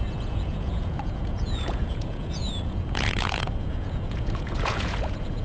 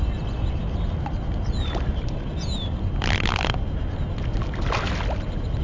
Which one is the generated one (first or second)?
first